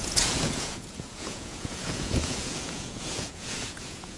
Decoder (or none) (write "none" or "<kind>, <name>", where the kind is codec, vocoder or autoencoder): vocoder, Vocos